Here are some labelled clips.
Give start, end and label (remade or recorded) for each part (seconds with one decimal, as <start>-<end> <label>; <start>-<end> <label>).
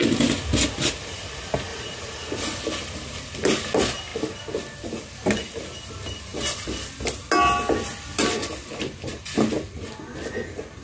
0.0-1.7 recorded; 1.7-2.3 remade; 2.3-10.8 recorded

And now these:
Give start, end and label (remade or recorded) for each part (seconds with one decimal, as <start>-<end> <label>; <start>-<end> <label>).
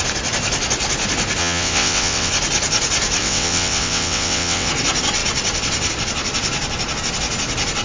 0.0-1.4 recorded; 1.4-2.3 remade; 2.3-3.2 recorded; 3.2-4.7 remade; 4.7-7.8 recorded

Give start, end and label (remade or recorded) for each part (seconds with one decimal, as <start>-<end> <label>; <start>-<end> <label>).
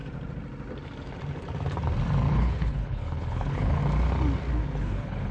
0.0-2.3 recorded; 2.3-3.8 remade; 3.8-4.8 recorded; 4.8-5.3 remade